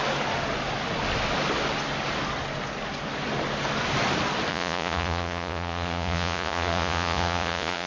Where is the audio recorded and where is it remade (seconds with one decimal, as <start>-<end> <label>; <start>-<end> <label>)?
0.0-4.5 recorded; 4.5-7.9 remade